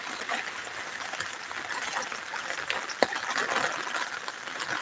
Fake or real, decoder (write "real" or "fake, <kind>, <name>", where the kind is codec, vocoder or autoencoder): real